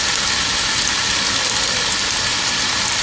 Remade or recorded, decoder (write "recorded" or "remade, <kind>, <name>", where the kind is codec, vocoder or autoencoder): remade, vocoder, BigVGAN v2